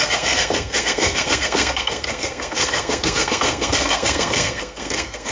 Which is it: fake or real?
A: fake